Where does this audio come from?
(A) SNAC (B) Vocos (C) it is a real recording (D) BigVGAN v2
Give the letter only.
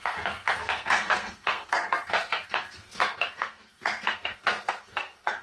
A